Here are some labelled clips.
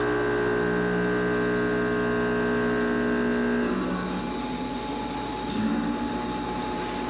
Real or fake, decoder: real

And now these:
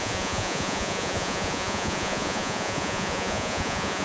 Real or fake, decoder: fake, vocoder, Vocos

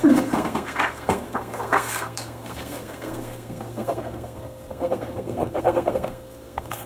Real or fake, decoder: fake, codec, SNAC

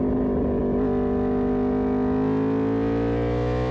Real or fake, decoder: real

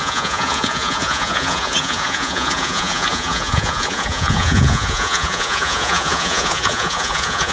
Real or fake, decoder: fake, vocoder, Vocos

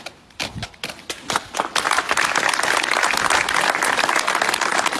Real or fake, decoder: real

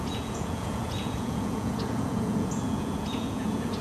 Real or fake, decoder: fake, vocoder, Vocos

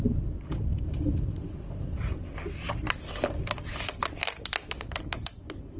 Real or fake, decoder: real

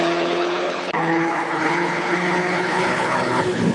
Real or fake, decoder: fake, codec, HILCodec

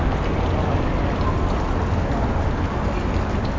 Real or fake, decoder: real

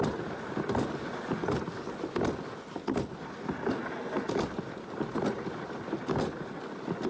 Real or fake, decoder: real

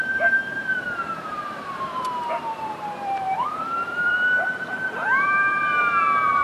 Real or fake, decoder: fake, vocoder, BigVGAN v2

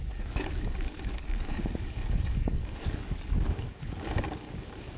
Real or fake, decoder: fake, codec, DAC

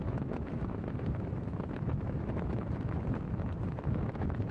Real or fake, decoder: fake, autoencoder, DAC-VAE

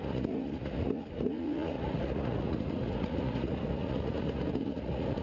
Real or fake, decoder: fake, vocoder, Vocos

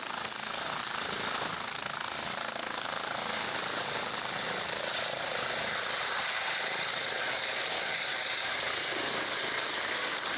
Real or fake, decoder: real